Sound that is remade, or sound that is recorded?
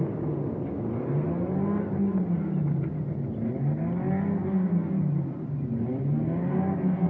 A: recorded